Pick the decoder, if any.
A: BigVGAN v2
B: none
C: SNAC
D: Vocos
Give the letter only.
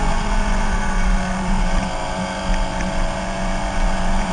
D